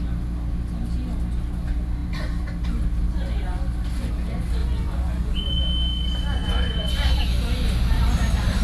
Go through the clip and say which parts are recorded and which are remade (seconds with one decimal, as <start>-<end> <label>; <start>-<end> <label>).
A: 0.0-4.6 recorded; 4.6-5.6 remade; 5.6-6.4 recorded; 6.4-7.2 remade; 7.2-8.6 recorded

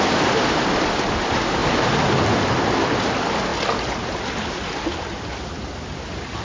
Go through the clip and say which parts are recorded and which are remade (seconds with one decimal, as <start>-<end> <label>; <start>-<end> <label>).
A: 0.0-6.4 recorded

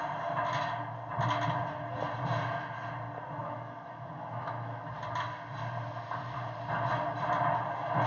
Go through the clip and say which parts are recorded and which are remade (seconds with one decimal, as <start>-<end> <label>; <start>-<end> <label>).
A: 0.0-3.4 recorded; 3.4-4.9 remade; 4.9-8.1 recorded

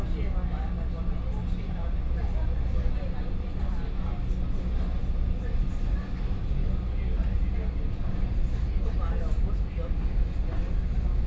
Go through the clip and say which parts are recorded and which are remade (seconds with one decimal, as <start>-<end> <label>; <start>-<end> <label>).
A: 0.0-11.3 recorded

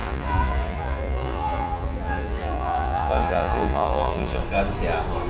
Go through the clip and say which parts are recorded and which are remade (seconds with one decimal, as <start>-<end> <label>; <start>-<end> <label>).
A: 0.0-4.4 remade; 4.4-5.3 recorded

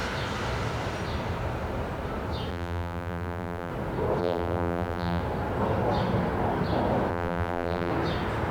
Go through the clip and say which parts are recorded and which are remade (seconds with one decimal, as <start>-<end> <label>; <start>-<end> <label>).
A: 0.0-2.5 recorded; 2.5-3.7 remade; 3.7-4.2 recorded; 4.2-5.2 remade; 5.2-7.1 recorded; 7.1-7.9 remade; 7.9-8.5 recorded

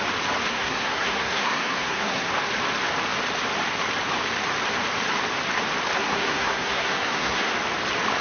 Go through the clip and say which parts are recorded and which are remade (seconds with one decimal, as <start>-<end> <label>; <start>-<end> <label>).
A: 0.0-0.5 recorded; 0.5-2.3 remade; 2.3-6.0 recorded; 6.0-7.5 remade; 7.5-8.2 recorded

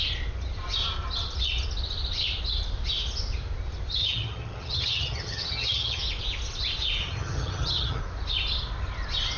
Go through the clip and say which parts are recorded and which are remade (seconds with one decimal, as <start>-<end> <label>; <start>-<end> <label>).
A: 0.0-4.0 recorded; 4.0-6.0 remade; 6.0-7.0 recorded; 7.0-8.0 remade; 8.0-9.4 recorded